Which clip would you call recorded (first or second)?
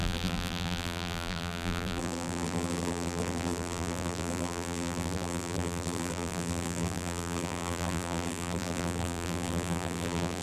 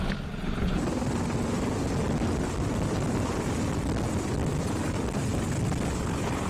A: second